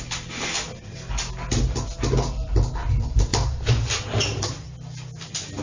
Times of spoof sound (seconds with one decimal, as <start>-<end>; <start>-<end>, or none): none